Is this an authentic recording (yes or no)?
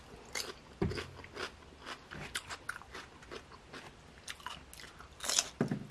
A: yes